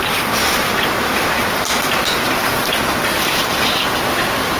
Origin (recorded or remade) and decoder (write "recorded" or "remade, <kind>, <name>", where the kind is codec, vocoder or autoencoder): recorded